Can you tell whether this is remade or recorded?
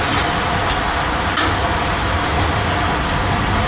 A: recorded